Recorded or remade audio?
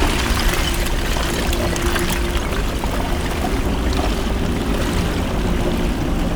recorded